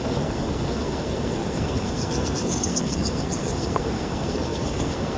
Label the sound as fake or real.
fake